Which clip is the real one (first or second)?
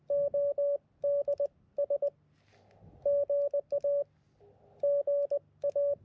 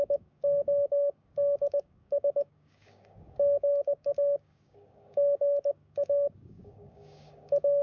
first